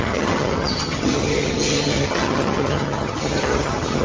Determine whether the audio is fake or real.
fake